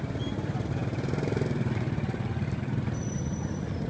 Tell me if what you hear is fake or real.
real